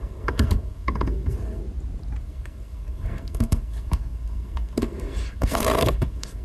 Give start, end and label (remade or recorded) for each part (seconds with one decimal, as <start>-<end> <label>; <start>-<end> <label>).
0.0-1.6 remade; 1.6-2.2 recorded; 2.2-6.4 remade